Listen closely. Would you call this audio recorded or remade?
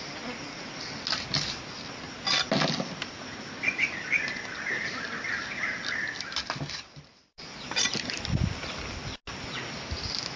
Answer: recorded